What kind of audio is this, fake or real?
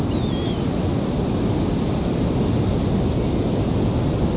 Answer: real